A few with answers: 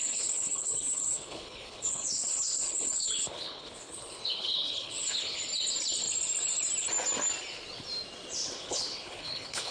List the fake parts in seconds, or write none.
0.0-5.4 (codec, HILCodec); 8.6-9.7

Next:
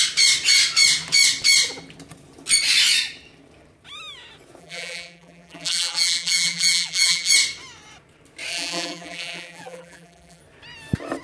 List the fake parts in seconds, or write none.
4.6-7.3 (vocoder, BigVGAN v2); 8.5-10.4